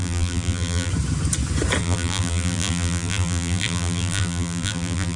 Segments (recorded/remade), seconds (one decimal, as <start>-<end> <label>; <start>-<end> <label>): 0.0-0.9 remade; 0.9-1.8 recorded; 1.8-5.2 remade